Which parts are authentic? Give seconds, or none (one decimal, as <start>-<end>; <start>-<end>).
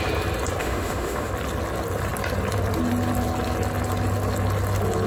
0.0-0.6; 1.3-5.1